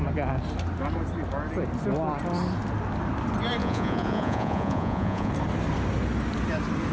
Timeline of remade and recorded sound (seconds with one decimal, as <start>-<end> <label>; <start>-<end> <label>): 0.0-3.6 recorded; 3.6-5.3 remade; 5.3-6.9 recorded

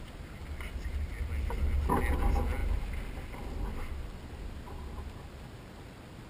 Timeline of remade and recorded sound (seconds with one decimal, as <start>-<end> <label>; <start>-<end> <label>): 0.0-6.3 recorded